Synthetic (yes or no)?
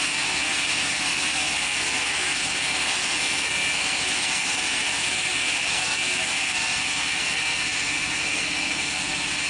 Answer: yes